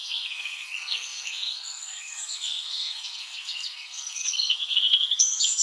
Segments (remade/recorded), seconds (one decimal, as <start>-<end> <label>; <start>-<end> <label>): 0.0-5.6 remade